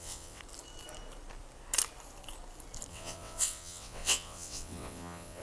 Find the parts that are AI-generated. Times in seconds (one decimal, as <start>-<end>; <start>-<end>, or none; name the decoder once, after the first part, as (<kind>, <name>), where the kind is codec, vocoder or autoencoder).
0.0-0.4 (vocoder, WaveNeXt); 2.9-5.4